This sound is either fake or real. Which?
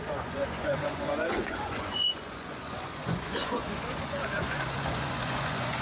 fake